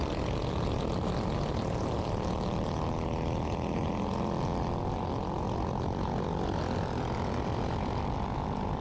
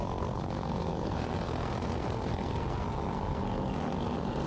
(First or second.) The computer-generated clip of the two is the second